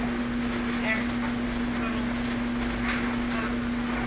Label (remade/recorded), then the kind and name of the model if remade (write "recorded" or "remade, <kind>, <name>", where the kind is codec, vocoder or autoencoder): recorded